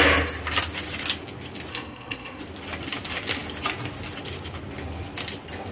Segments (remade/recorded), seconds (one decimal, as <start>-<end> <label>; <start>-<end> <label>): 0.0-1.7 recorded; 1.7-2.4 remade; 2.4-5.7 recorded